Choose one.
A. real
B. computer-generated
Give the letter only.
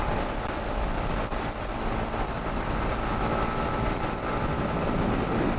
A